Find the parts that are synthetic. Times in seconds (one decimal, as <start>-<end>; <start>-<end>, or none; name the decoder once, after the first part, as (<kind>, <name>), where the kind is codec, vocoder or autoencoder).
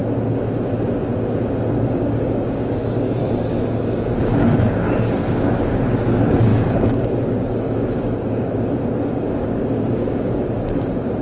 1.7-11.2 (codec, DAC)